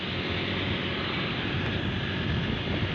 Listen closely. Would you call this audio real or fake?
real